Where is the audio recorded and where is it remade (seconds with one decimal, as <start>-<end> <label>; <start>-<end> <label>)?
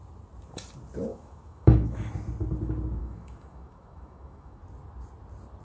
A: 0.0-1.1 recorded; 1.1-2.1 remade; 2.1-3.0 recorded; 3.0-4.6 remade; 4.6-5.6 recorded